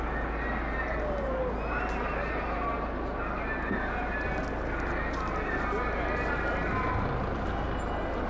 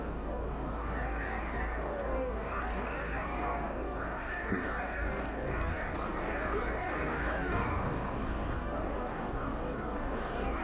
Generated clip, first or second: second